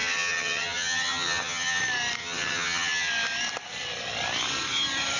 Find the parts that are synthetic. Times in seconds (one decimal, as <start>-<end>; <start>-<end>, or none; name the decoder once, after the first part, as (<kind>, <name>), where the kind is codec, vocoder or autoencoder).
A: 0.0-1.8 (vocoder, HiFi-GAN); 2.2-3.1